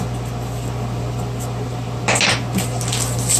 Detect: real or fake real